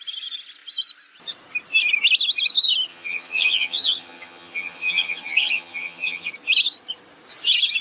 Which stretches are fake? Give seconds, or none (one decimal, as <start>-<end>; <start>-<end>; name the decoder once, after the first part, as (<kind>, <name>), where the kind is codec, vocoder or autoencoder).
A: 2.9-6.3 (vocoder, HiFi-GAN)